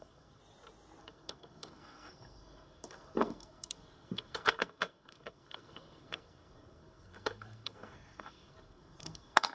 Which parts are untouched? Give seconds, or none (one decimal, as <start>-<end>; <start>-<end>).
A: 0.4-1.0

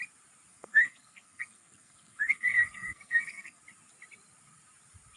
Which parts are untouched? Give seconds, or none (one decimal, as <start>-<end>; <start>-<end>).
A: 0.0-0.5; 3.6-5.2

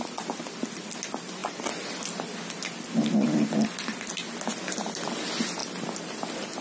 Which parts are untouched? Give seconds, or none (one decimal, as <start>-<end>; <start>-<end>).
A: 0.0-6.6

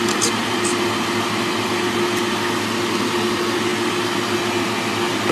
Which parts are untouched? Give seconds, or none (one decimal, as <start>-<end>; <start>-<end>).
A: 0.0-5.3

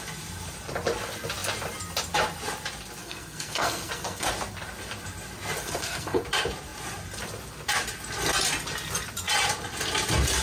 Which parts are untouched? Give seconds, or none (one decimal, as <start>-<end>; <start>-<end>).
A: 0.0-3.0; 4.3-5.6; 6.2-10.4